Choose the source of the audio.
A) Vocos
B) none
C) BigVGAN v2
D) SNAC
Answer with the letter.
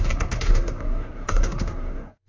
D